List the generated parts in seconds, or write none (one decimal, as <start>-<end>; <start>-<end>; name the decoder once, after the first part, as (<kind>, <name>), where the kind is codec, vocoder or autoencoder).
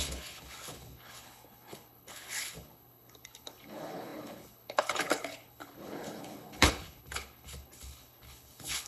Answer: 0.0-8.9 (codec, HILCodec)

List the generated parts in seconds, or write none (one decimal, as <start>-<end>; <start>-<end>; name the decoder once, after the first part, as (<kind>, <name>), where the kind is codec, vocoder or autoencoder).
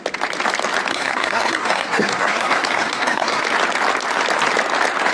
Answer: 0.9-3.4 (codec, SNAC)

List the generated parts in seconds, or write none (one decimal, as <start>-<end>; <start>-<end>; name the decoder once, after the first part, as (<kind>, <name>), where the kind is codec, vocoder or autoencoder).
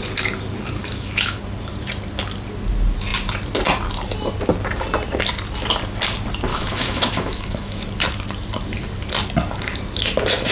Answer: 0.8-1.4 (autoencoder, DAC-VAE); 6.5-7.8